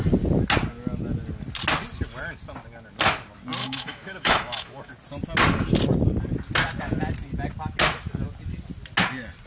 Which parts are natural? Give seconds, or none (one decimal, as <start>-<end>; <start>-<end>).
0.0-3.6; 4.9-9.5